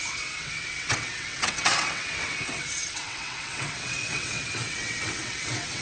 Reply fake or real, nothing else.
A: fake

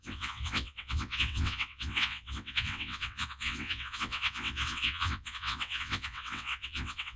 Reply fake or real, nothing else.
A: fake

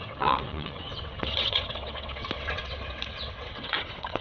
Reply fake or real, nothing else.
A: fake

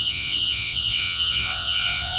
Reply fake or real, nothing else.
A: fake